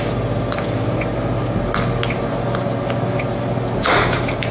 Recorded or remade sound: recorded